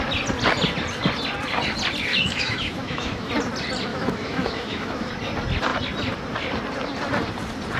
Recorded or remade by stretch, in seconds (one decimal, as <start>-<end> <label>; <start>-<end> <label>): 0.0-2.1 recorded; 2.1-3.3 remade; 3.3-3.9 recorded; 3.9-5.1 remade; 5.1-7.8 recorded